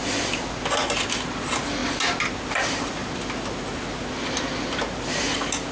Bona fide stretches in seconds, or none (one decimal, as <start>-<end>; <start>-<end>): 0.0-5.7